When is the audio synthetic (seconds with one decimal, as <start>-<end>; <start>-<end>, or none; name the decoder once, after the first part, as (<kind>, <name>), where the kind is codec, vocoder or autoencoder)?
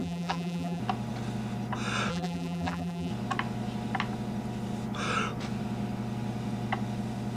0.0-0.8 (vocoder, BigVGAN v2); 2.1-3.1